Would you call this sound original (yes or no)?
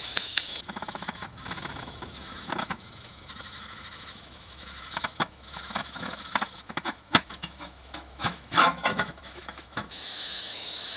no